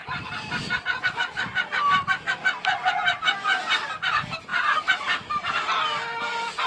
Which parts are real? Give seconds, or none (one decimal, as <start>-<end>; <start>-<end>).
0.0-6.7